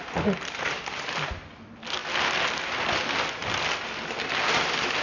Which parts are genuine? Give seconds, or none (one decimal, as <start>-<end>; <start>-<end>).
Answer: 0.0-5.0